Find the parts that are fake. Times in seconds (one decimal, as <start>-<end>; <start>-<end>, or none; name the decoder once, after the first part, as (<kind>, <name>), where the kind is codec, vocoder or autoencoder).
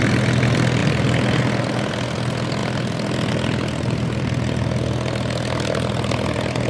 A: none